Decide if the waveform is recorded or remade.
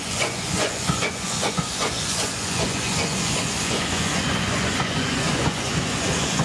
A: remade